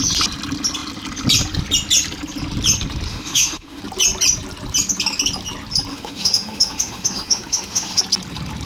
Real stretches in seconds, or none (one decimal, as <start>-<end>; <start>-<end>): 0.0-3.1; 3.8-5.9; 8.0-8.7

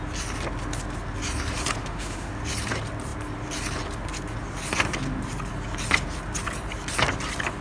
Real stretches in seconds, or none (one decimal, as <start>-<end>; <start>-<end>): 0.0-1.8; 2.3-7.6

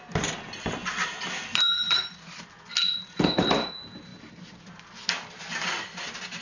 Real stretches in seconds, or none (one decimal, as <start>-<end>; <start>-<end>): 0.0-0.8; 2.4-6.4

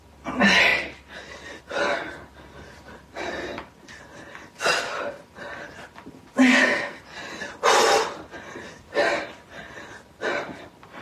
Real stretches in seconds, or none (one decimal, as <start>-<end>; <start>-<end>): 0.0-6.5; 7.0-11.0

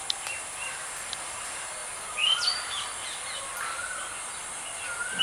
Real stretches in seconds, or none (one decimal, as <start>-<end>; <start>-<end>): 0.0-5.2